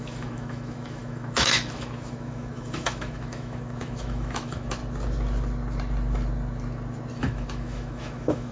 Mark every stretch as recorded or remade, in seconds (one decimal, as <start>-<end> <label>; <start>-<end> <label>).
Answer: 0.0-4.8 remade; 4.8-7.2 recorded; 7.2-8.5 remade